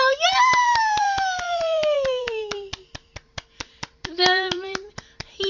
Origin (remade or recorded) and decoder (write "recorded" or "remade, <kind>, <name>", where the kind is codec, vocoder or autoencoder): remade, vocoder, BigVGAN v2